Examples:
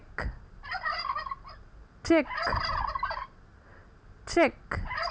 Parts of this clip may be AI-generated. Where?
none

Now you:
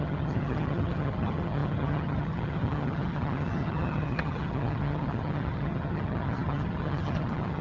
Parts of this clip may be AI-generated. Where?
0.0-7.6 (vocoder, HiFi-GAN)

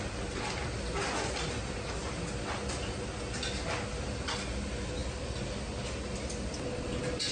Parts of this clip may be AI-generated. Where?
none

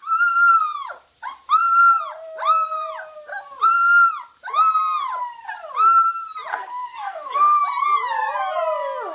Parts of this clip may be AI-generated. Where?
6.5-7.6 (codec, SNAC)